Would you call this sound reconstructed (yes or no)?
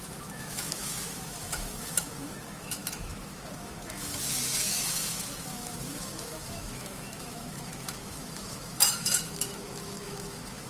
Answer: yes